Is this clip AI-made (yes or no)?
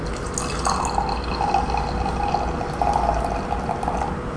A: no